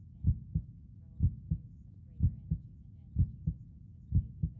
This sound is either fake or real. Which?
real